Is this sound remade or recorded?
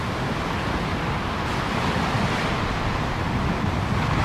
recorded